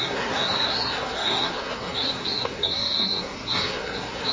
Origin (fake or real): fake